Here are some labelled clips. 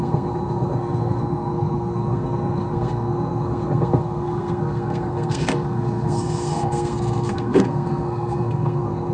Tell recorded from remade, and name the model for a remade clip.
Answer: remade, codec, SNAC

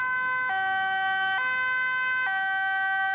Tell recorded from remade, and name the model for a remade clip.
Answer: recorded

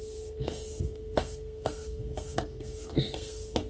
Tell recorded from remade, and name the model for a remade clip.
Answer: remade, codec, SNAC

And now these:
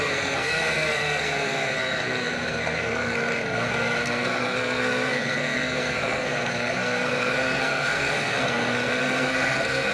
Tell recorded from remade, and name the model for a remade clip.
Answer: remade, codec, SNAC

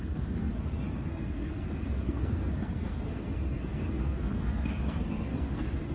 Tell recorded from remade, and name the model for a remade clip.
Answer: remade, codec, SNAC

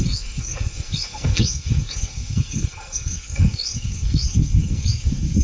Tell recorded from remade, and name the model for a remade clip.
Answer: remade, codec, SNAC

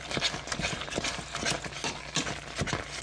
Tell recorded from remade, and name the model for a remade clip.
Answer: recorded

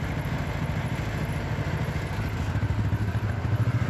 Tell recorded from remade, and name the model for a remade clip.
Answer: recorded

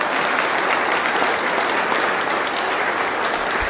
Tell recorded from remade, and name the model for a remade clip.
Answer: recorded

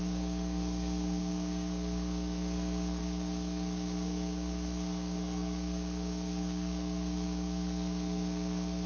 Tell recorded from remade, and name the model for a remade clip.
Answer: remade, codec, SNAC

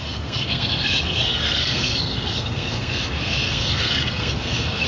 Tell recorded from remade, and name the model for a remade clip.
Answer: remade, codec, SNAC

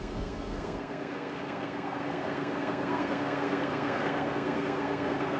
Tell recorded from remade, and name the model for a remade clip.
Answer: remade, codec, SNAC